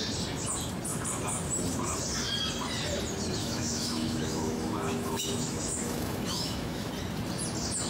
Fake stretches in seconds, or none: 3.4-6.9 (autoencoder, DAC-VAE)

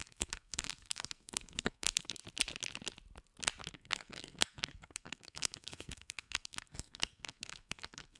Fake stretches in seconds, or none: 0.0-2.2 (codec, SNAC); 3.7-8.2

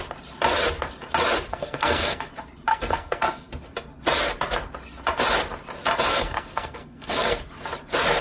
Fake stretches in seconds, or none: 1.5-2.3 (codec, SNAC); 2.7-3.5; 6.1-7.4